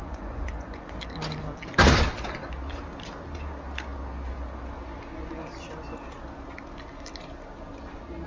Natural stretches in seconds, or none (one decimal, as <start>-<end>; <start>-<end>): 1.0-8.3

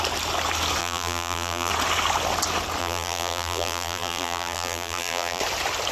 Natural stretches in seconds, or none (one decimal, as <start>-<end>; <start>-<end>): 0.0-0.8; 1.7-2.8; 5.4-5.9

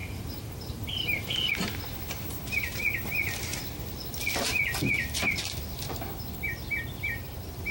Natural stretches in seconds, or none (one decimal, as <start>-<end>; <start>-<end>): 1.5-7.7